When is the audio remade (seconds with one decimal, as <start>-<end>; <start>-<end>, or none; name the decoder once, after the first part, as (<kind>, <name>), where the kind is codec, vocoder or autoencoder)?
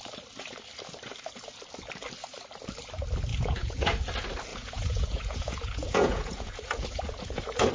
3.3-4.0 (vocoder, Vocos); 4.5-7.7